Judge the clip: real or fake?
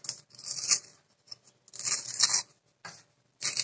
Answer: real